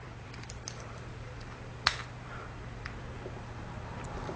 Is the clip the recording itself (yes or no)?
no